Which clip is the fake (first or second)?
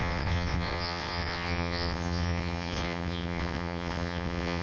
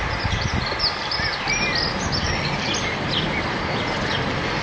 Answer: first